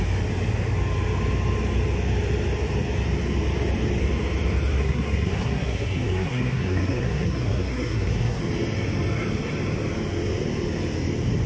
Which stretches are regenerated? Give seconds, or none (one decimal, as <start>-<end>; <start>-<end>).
4.8-8.4